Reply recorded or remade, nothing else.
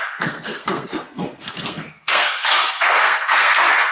remade